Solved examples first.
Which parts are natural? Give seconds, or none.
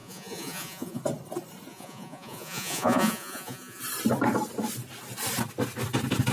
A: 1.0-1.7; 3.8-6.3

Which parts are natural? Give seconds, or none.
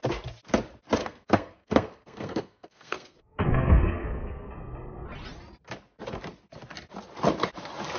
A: 0.0-1.0; 4.5-8.0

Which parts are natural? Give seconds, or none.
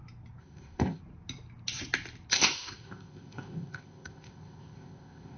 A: 0.0-0.4; 1.0-2.3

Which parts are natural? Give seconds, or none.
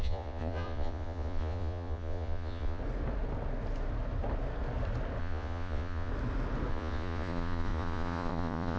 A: 2.8-5.2; 6.1-6.7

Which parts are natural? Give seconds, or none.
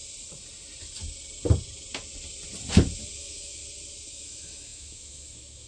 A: 0.0-3.2; 3.6-4.1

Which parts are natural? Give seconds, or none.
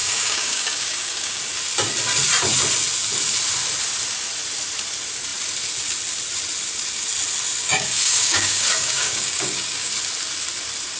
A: 1.4-7.6; 9.9-11.0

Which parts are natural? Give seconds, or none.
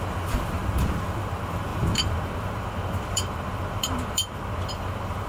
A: none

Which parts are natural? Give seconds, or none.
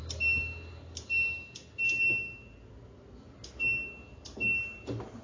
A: 0.0-5.2